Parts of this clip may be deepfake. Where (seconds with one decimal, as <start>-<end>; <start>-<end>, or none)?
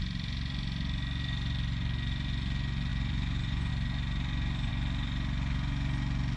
2.9-3.7